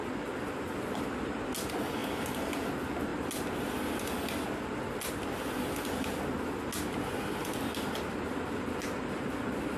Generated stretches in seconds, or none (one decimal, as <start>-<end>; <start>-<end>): none